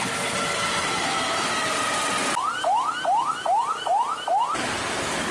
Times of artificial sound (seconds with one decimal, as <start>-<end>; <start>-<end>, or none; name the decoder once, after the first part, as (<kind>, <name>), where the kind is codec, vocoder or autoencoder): none